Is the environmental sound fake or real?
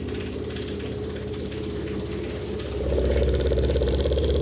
fake